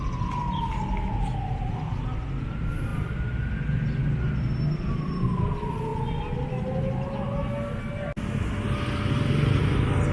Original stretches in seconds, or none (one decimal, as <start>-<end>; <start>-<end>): 0.0-10.1